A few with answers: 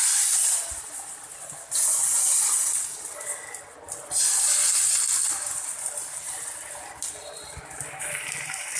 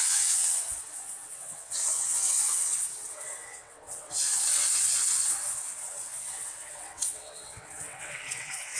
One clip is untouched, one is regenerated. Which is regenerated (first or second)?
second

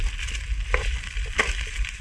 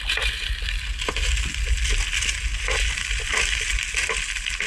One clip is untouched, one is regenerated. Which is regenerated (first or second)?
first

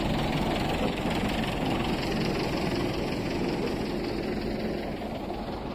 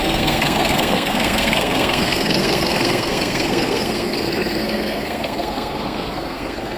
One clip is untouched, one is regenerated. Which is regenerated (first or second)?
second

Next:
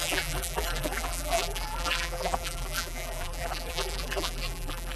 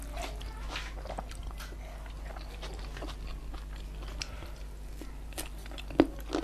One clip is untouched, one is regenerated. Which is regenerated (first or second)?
first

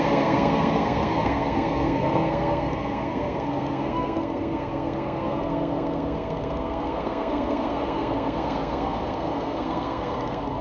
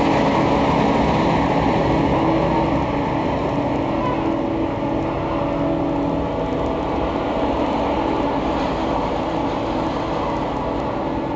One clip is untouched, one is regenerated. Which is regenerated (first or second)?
first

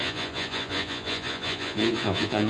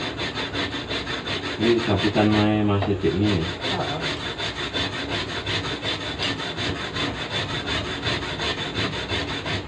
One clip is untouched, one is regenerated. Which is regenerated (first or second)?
first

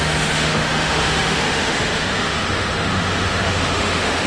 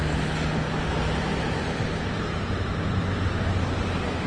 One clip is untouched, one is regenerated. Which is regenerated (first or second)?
first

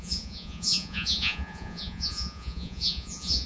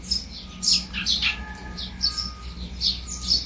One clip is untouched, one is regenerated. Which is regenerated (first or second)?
first